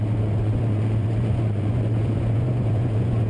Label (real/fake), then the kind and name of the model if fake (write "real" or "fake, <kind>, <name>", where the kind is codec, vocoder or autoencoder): fake, vocoder, Vocos